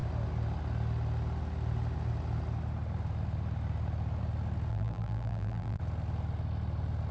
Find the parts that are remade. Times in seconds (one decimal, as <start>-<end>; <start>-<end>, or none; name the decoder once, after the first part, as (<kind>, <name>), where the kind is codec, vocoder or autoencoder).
4.7-5.8 (vocoder, BigVGAN v2)